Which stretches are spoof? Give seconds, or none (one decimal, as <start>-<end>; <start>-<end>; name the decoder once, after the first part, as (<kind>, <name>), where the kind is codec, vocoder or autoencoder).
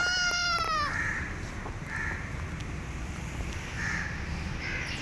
none